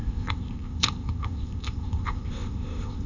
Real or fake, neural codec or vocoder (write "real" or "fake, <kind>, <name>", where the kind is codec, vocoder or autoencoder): fake, codec, ZipCodec